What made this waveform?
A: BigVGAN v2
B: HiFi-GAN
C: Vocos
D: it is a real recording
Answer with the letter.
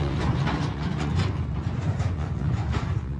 C